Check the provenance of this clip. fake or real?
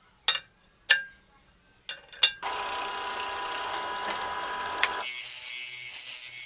real